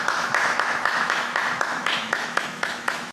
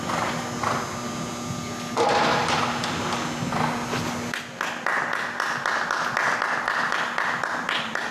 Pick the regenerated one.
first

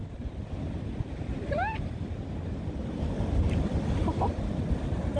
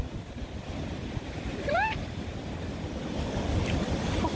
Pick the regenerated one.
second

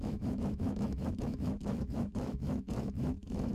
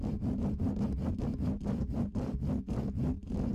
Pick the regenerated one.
first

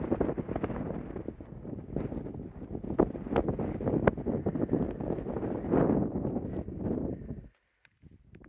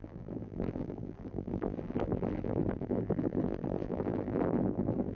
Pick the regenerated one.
second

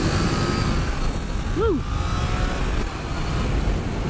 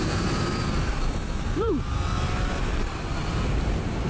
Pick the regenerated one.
second